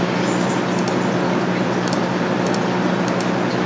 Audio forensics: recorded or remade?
recorded